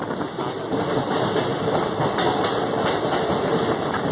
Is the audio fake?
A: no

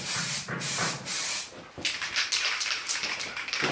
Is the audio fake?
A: yes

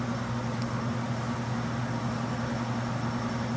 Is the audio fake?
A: no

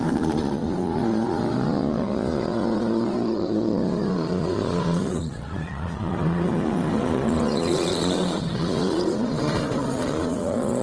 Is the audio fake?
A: yes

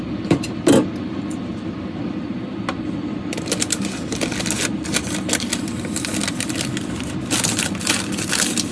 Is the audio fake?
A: no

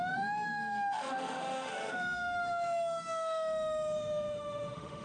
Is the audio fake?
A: yes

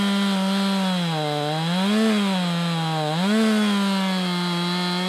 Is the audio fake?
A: no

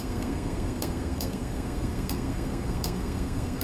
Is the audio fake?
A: yes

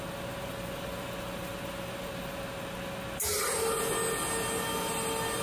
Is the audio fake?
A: no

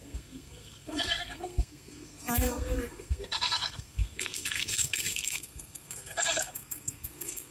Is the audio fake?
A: yes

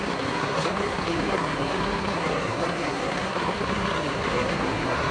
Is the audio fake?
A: yes